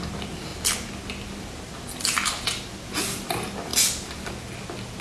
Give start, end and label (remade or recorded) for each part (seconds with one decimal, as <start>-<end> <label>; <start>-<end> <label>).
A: 0.0-5.0 recorded